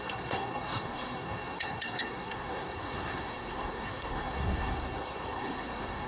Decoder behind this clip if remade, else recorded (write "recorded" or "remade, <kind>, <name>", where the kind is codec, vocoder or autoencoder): remade, codec, SNAC